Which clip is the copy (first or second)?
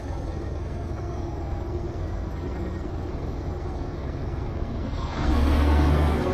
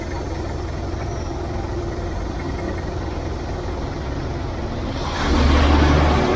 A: first